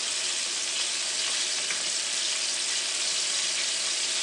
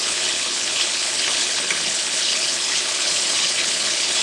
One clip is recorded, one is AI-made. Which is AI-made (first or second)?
second